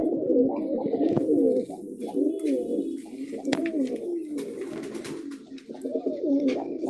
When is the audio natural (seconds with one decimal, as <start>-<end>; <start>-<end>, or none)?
0.0-5.9

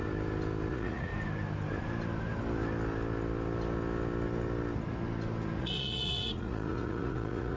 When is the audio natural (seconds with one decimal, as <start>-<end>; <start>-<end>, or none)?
0.0-0.7; 1.1-5.6

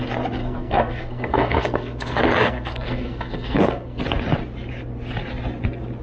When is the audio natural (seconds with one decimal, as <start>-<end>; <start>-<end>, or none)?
0.0-0.4; 4.0-6.0

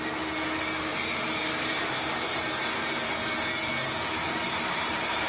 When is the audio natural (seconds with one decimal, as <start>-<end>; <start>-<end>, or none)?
0.0-0.9; 2.4-4.2

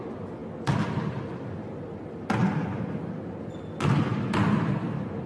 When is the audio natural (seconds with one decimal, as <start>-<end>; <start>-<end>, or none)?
0.0-5.3